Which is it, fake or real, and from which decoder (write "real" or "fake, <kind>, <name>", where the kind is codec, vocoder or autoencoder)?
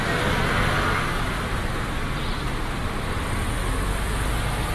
real